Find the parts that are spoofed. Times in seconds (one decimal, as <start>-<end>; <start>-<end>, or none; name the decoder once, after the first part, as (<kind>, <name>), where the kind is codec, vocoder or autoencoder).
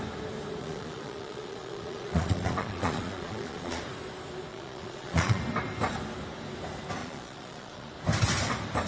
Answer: 0.6-3.8 (vocoder, Vocos); 4.5-5.4; 7.0-7.9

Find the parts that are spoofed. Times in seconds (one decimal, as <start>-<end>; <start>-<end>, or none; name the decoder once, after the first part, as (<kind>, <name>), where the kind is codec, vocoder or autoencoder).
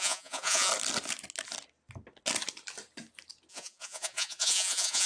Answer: 0.0-0.7 (vocoder, Vocos); 3.5-5.1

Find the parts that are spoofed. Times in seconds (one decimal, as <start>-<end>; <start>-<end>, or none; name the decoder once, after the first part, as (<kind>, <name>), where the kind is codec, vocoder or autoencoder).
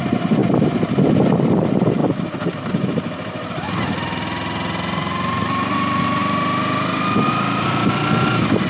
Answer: none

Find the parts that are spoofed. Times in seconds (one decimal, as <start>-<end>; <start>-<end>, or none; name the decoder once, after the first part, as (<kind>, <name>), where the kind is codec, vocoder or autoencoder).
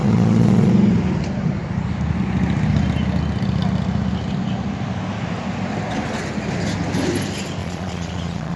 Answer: 0.0-0.7 (vocoder, Vocos); 7.6-8.6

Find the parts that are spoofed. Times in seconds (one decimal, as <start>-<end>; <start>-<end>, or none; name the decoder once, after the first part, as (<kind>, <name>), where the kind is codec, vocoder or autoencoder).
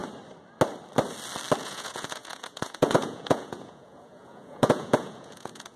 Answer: 1.6-5.8 (vocoder, Vocos)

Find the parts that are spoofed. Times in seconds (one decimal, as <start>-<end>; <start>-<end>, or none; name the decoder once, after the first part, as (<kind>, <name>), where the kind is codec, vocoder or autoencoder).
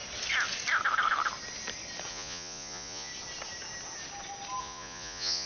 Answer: 2.1-3.1 (vocoder, Vocos); 4.6-5.5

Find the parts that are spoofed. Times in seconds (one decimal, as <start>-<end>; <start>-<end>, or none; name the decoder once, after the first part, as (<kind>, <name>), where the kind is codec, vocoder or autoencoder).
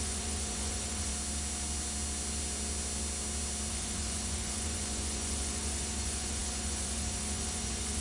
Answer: 0.0-1.1 (vocoder, Vocos); 3.7-8.0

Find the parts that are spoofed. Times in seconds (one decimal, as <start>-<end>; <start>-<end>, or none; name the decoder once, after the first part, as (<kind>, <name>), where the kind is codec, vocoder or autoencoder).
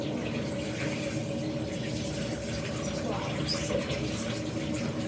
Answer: none